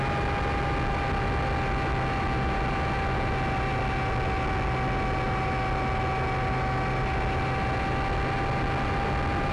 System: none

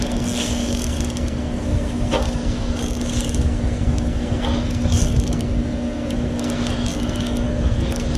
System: codec, SNAC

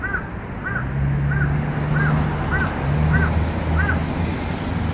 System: none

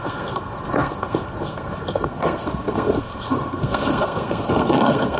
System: codec, SNAC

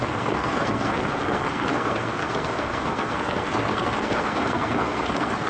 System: codec, SNAC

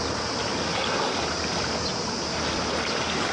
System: none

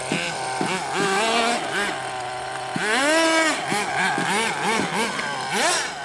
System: none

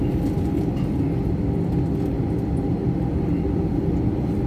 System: none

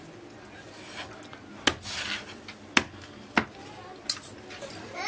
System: none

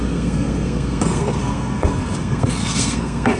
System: codec, SNAC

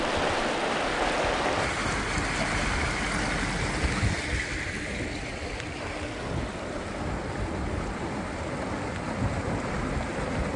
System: none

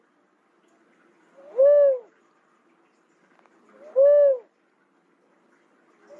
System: none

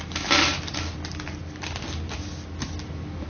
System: none